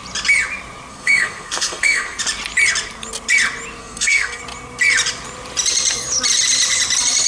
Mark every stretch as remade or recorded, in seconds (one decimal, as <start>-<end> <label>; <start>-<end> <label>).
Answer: 0.0-0.9 recorded; 0.9-2.2 remade; 2.2-3.8 recorded; 3.8-4.4 remade; 4.4-7.3 recorded